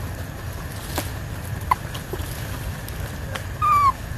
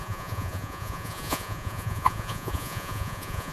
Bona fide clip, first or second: first